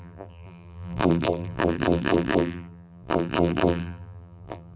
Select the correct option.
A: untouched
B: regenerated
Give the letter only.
B